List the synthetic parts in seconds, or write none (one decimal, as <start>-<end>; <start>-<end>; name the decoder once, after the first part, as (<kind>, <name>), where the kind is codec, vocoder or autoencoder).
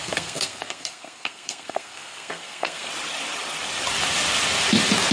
0.0-2.9 (codec, SNAC)